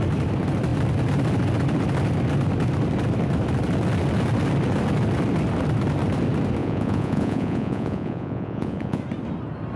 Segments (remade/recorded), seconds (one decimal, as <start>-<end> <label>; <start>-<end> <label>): 0.0-6.6 recorded; 6.6-9.0 remade; 9.0-9.8 recorded